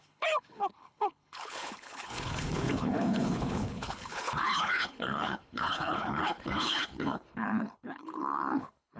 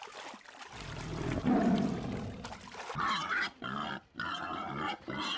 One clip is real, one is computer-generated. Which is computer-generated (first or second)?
first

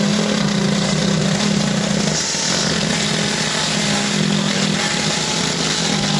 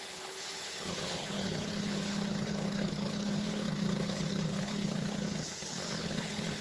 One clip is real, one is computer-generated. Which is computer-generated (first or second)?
second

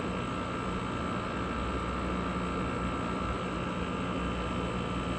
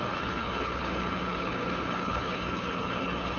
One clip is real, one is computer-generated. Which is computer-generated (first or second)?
second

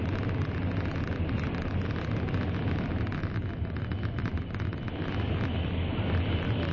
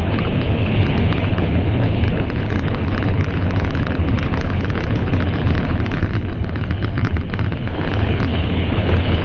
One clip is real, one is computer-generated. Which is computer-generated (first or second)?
second